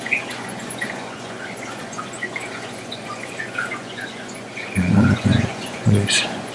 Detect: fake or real fake